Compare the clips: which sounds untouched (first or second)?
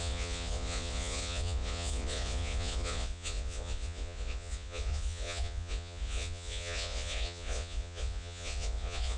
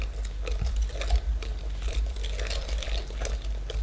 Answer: second